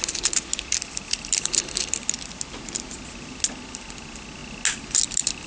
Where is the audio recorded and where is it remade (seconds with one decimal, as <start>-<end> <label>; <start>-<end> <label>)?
0.0-5.5 recorded